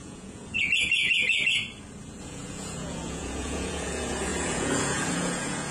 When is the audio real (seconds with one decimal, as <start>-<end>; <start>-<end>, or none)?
1.6-2.2